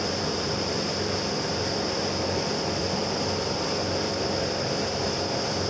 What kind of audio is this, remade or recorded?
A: remade